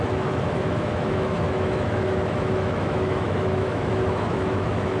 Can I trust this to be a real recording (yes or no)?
no